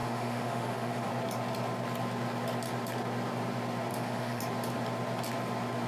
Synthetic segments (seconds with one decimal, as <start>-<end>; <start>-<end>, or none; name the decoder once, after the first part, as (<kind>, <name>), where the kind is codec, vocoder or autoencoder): 0.0-1.1 (autoencoder, DAC-VAE); 3.9-4.4